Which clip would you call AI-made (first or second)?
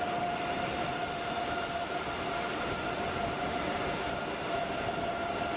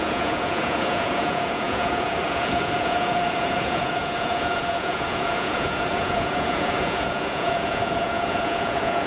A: second